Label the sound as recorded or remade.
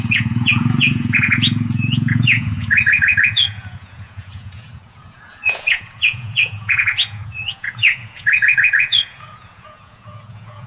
remade